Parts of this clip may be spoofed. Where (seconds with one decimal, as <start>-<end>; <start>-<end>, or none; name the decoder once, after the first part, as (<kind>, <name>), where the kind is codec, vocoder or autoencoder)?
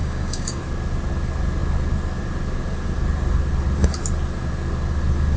0.0-0.6 (codec, DAC)